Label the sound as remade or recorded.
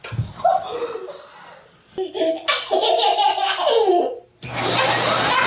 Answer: recorded